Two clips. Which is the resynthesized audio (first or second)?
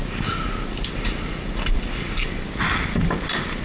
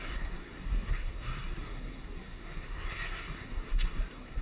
second